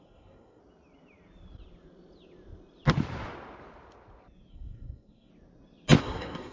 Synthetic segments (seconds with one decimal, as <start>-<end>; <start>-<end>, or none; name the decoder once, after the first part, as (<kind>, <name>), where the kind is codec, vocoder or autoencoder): 0.0-0.6 (codec, SNAC); 4.5-5.3; 6.0-6.5